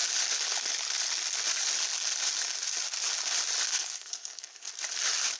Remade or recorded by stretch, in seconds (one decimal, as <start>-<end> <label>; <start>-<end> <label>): 0.0-3.7 recorded; 3.7-4.7 remade; 4.7-5.4 recorded